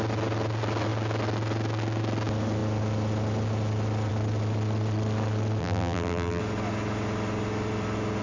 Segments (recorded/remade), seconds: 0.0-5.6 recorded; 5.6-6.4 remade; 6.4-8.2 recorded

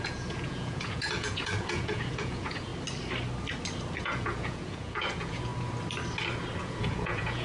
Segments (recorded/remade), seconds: 0.0-2.7 remade; 2.7-4.0 recorded; 4.0-5.5 remade; 5.5-6.6 recorded; 6.6-7.4 remade

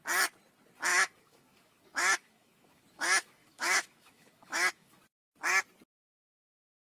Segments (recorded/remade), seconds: 0.0-0.9 recorded; 0.9-5.0 remade; 5.0-6.9 recorded

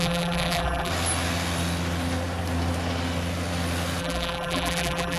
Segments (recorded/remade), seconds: 0.0-0.9 remade; 0.9-4.0 recorded; 4.0-5.2 remade

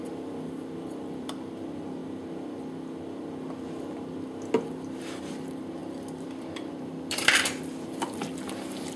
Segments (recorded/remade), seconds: 0.0-2.0 remade; 2.0-5.0 recorded; 5.0-9.0 remade

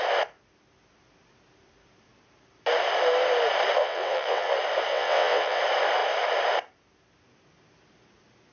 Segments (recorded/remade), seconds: 0.0-3.8 recorded; 3.8-4.5 remade; 4.5-4.9 recorded; 4.9-5.6 remade; 5.6-8.5 recorded

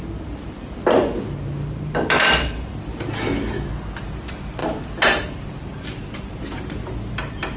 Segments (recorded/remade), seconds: 0.0-7.6 recorded

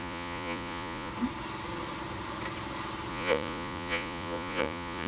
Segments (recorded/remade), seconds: 0.0-1.1 remade; 1.1-3.1 recorded; 3.1-5.1 remade